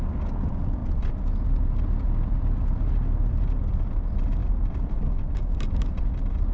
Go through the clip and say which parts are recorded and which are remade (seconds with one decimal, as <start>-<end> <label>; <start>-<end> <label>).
0.0-6.5 recorded